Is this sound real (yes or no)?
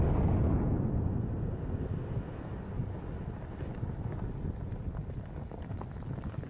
yes